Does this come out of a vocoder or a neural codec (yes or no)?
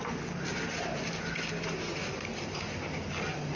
no